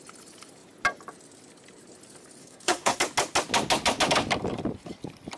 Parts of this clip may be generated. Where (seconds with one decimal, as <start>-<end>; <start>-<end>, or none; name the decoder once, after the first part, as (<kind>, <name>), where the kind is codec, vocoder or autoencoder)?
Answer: 2.4-3.0 (codec, SNAC)